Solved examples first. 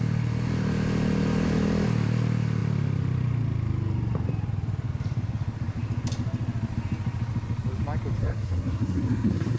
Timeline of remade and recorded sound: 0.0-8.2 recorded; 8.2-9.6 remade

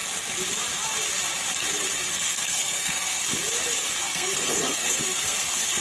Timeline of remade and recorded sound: 0.0-2.1 recorded; 2.1-3.2 remade; 3.2-4.0 recorded; 4.0-5.8 remade

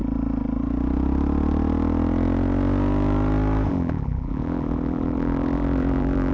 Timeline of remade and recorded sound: 0.0-3.7 recorded; 3.7-6.3 remade

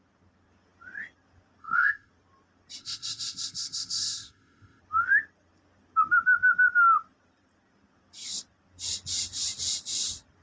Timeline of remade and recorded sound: 0.0-1.6 recorded; 1.6-2.1 remade; 2.1-2.8 recorded; 2.8-4.8 remade; 4.8-10.4 recorded